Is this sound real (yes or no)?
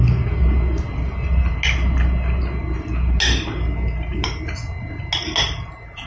yes